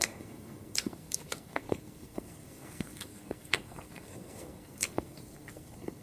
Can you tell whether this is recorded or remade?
remade